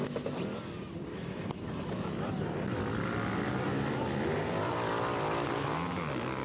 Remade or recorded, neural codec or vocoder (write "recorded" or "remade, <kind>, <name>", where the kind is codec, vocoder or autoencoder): recorded